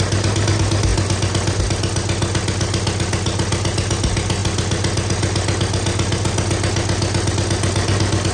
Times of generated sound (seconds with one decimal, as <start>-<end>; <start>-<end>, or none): none